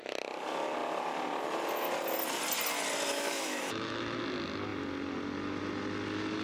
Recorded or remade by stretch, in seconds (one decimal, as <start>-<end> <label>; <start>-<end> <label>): 0.0-3.1 recorded; 3.1-4.2 remade; 4.2-6.4 recorded